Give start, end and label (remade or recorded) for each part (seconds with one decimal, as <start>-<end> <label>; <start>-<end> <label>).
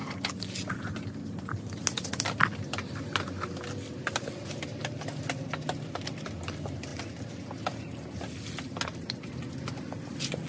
0.0-10.5 recorded